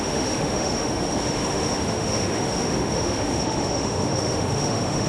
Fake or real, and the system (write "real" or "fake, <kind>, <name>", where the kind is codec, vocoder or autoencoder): fake, autoencoder, DAC-VAE